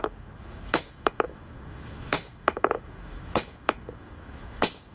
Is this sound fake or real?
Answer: fake